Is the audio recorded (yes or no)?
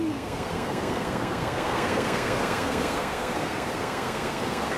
no